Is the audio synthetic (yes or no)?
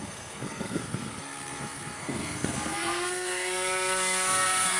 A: yes